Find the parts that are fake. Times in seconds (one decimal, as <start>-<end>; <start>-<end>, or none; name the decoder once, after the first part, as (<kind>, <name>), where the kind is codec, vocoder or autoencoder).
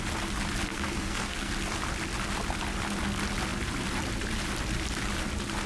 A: 0.7-1.5 (codec, SNAC)